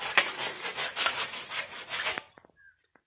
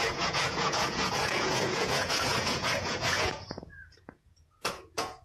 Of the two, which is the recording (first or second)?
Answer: first